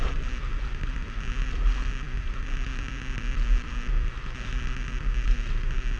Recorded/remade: remade